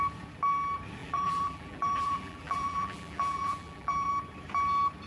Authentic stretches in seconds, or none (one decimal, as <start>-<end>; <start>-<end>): 0.0-1.0; 4.1-5.1